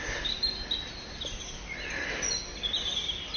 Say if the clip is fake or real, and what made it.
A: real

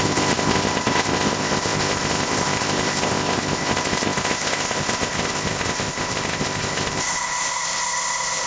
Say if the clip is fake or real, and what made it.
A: fake, codec, ZipCodec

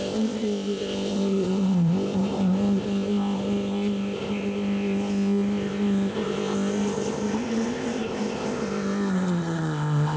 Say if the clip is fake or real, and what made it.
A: fake, codec, ZipCodec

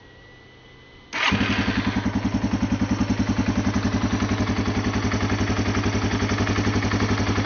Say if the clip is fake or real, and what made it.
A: real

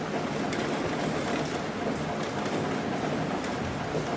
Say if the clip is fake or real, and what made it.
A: real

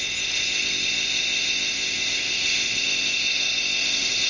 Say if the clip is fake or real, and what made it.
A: fake, codec, ZipCodec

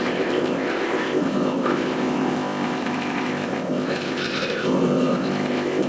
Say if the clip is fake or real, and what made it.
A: fake, codec, ZipCodec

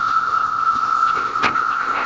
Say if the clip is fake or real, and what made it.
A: fake, codec, ZipCodec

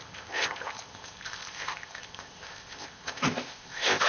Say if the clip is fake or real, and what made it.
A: fake, codec, ZipCodec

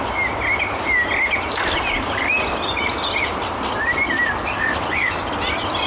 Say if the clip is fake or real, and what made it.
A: real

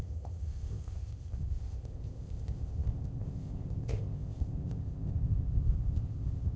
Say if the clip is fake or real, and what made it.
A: fake, codec, ZipCodec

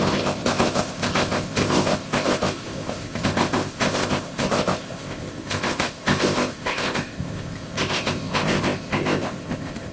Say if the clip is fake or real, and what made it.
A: fake, codec, ZipCodec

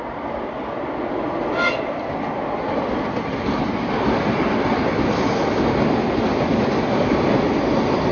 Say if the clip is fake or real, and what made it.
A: real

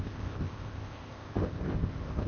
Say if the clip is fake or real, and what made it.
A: fake, codec, ZipCodec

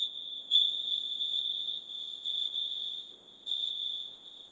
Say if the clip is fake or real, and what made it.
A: fake, codec, ZipCodec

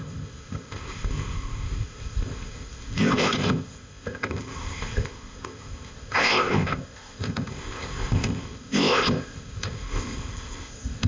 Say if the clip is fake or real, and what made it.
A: fake, codec, ZipCodec